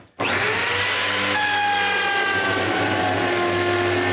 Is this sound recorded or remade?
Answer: recorded